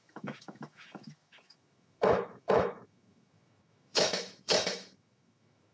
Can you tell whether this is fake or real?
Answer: fake